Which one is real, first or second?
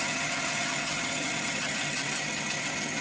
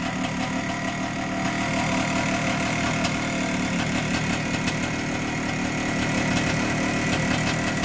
second